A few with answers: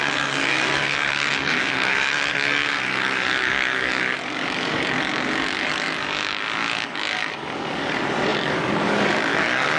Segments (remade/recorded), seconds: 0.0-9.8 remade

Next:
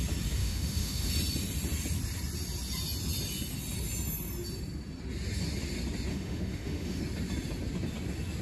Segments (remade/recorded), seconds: 0.0-0.4 recorded; 0.4-1.1 remade; 1.1-6.1 recorded; 6.1-7.0 remade; 7.0-8.4 recorded